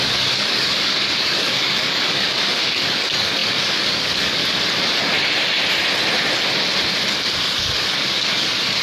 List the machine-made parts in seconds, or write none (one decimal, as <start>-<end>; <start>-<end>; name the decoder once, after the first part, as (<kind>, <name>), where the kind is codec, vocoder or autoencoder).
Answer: 0.0-4.4 (codec, DAC); 7.4-8.8